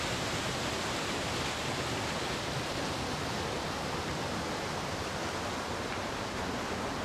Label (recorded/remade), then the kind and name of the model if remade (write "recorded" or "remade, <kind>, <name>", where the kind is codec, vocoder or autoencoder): recorded